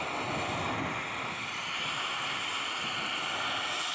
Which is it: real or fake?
real